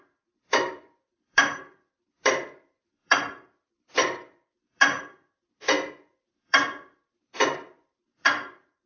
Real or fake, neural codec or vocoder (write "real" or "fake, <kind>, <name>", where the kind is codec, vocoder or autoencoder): fake, vocoder, BigVGAN v2